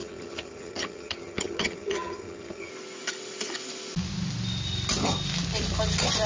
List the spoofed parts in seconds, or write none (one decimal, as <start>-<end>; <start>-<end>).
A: 0.0-2.7